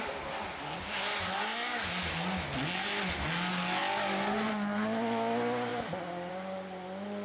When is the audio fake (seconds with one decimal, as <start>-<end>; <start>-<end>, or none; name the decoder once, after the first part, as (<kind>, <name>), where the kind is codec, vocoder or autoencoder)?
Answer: none